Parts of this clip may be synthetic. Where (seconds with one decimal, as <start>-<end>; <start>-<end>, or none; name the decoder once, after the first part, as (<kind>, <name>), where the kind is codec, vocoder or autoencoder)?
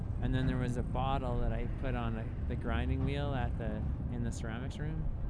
none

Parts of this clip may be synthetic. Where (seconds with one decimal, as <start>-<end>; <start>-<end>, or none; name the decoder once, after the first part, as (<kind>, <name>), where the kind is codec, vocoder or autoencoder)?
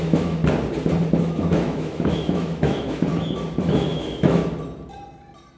0.0-0.4 (autoencoder, DAC-VAE); 1.2-3.1; 3.6-4.4